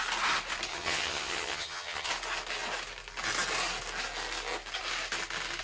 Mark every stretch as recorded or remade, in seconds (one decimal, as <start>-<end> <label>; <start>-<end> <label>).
0.0-0.7 recorded; 0.7-2.1 remade; 2.1-5.6 recorded